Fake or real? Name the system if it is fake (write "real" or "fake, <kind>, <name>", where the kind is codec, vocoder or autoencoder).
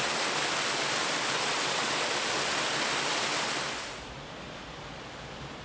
real